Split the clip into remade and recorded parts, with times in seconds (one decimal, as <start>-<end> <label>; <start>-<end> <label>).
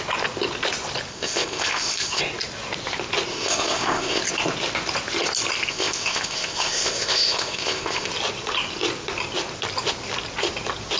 0.0-1.1 recorded; 1.1-2.2 remade; 2.2-3.3 recorded; 3.3-4.2 remade; 4.2-5.7 recorded; 5.7-8.1 remade; 8.1-11.0 recorded